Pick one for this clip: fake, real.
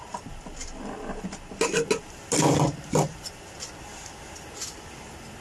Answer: real